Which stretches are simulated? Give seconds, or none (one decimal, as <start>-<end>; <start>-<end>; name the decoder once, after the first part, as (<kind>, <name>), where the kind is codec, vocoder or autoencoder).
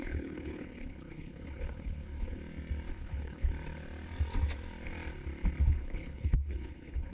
0.0-2.4 (codec, HILCodec); 2.9-3.5; 5.6-7.1